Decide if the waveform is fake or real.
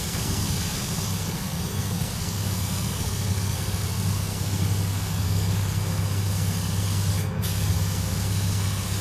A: fake